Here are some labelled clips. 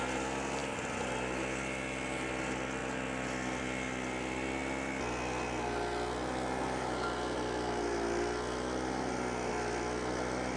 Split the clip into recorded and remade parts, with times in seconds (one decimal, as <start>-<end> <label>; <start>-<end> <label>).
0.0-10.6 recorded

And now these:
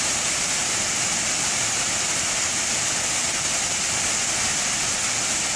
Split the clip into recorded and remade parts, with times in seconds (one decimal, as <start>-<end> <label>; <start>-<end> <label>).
0.0-0.6 recorded; 0.6-4.0 remade; 4.0-5.6 recorded

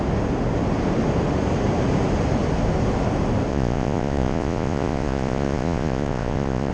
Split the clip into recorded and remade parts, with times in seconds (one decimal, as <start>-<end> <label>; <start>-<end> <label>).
0.0-3.5 recorded; 3.5-6.7 remade

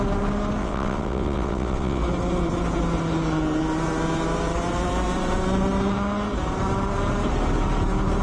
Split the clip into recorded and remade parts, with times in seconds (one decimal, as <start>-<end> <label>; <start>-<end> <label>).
0.0-0.6 recorded; 0.6-2.0 remade; 2.0-8.2 recorded

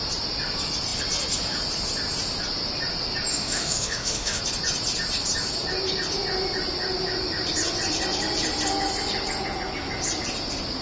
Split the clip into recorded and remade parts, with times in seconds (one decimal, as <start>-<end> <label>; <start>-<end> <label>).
0.0-3.3 recorded; 3.3-4.4 remade; 4.4-10.8 recorded

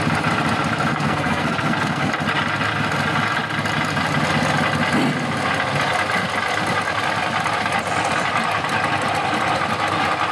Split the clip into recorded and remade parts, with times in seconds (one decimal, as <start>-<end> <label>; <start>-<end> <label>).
0.0-0.9 recorded; 0.9-2.1 remade; 2.1-10.3 recorded